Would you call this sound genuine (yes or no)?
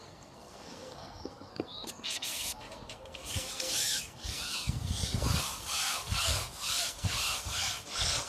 no